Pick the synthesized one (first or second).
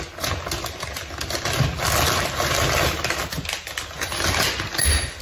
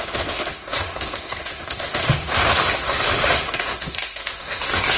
second